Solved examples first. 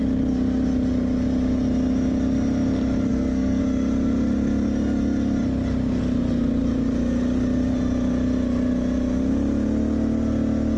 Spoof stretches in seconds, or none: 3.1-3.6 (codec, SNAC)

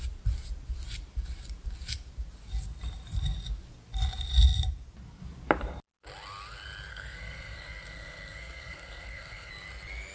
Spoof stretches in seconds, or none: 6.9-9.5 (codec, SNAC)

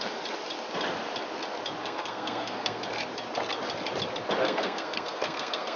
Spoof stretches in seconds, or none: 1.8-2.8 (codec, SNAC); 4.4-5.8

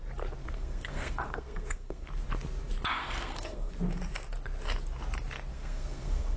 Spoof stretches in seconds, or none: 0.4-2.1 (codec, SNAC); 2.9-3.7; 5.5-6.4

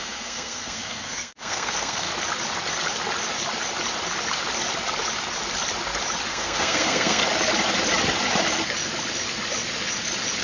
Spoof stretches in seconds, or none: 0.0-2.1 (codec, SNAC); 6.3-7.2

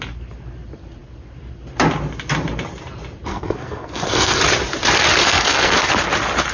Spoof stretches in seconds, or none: 3.3-4.4 (codec, SNAC); 5.2-5.9